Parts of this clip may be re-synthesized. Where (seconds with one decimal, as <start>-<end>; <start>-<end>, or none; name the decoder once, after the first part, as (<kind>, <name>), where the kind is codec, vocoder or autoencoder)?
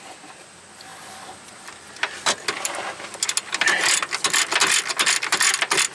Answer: none